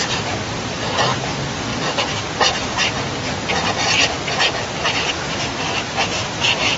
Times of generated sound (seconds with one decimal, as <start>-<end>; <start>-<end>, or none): none

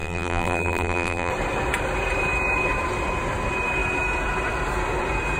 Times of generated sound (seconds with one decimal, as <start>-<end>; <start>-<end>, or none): 0.0-1.3

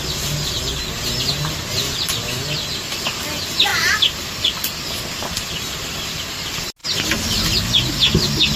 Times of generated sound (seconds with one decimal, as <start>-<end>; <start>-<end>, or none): none